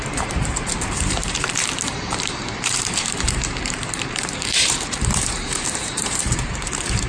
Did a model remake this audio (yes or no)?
yes